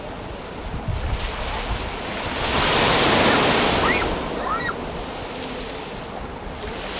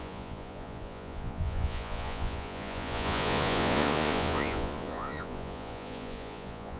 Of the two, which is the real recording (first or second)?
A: first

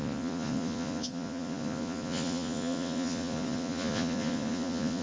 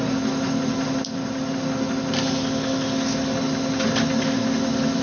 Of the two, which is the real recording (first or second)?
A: second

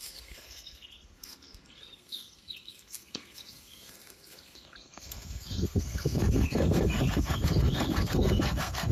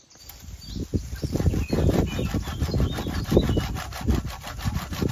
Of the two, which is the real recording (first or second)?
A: second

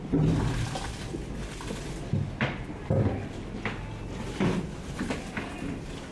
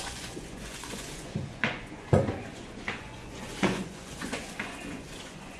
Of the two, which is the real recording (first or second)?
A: first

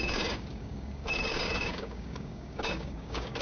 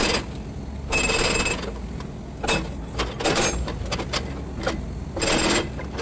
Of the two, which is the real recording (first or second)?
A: second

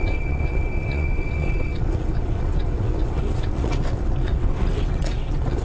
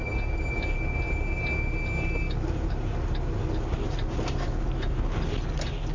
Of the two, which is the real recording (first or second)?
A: second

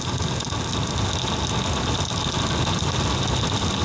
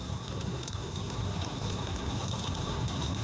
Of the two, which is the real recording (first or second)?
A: first